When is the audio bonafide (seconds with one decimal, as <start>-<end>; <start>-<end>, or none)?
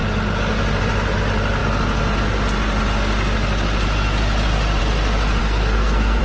0.0-5.4